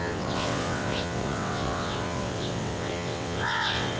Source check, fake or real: fake